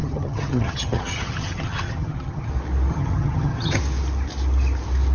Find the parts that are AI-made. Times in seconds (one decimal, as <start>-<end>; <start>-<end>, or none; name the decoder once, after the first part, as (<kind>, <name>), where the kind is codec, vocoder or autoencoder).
0.0-2.5 (vocoder, HiFi-GAN); 2.9-3.8